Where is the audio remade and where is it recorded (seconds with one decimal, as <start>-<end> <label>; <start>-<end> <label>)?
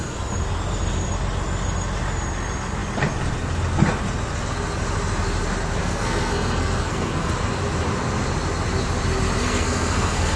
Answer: 0.0-5.8 recorded; 5.8-7.3 remade; 7.3-9.4 recorded; 9.4-10.4 remade